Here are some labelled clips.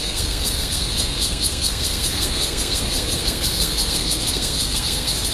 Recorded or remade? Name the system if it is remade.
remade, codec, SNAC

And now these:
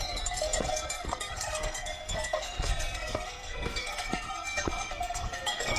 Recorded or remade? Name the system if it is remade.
remade, codec, SNAC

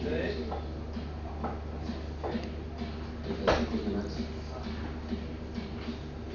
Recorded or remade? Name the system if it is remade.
recorded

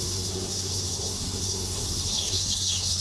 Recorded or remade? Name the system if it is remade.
remade, codec, SNAC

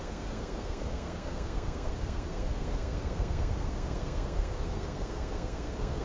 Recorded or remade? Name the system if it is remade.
remade, codec, SNAC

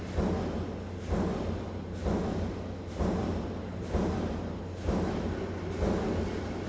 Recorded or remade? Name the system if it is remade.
recorded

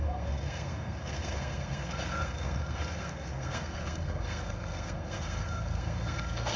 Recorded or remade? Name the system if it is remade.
remade, codec, SNAC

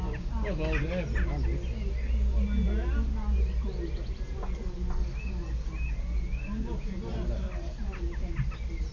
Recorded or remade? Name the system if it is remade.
recorded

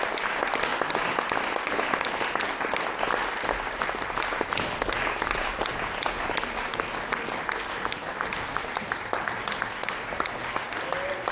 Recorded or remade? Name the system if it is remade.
recorded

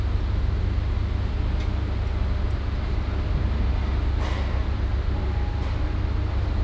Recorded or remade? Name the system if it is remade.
recorded